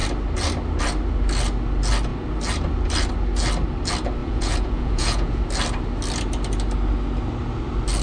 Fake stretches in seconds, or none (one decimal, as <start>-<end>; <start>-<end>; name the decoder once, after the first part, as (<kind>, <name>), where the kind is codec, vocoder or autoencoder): 4.2-5.4 (vocoder, Vocos)